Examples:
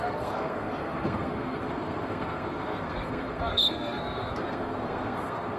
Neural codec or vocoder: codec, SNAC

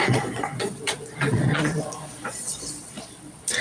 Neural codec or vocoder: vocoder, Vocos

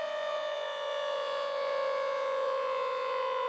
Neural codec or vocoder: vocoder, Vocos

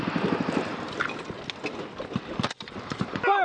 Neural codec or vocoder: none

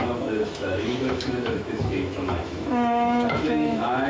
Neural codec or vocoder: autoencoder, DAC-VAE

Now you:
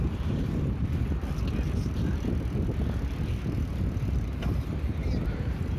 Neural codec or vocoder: none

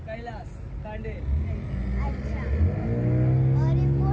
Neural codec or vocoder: none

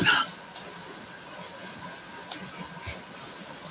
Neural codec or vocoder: none